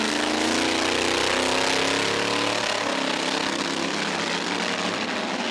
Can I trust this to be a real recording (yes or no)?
yes